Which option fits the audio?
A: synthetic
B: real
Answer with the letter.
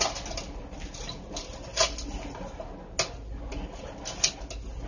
B